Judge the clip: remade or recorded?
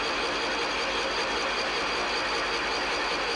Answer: recorded